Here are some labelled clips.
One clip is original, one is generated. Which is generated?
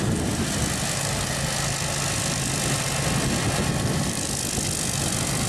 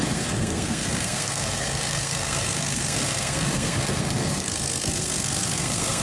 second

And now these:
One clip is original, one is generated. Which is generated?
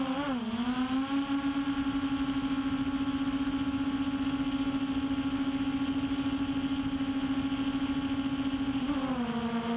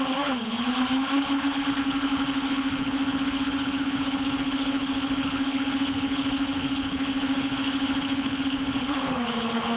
second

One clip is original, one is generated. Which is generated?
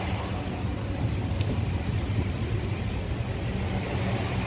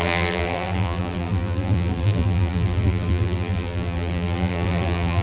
second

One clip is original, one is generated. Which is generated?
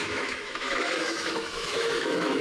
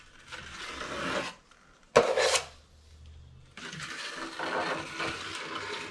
first